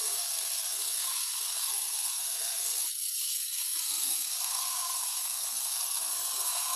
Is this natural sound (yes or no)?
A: no